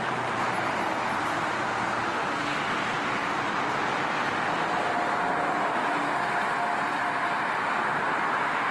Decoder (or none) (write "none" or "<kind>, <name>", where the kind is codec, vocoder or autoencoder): none